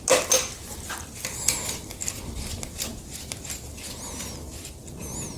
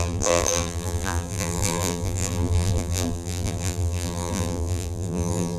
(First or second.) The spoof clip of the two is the second